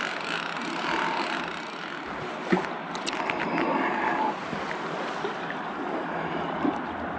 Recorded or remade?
recorded